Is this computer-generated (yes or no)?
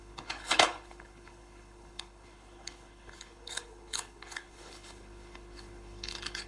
yes